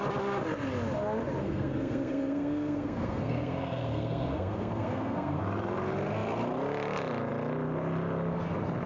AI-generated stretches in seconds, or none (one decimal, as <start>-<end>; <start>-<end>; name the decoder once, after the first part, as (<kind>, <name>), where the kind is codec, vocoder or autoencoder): 1.4-5.4 (codec, SNAC)